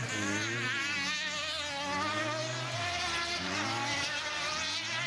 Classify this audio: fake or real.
real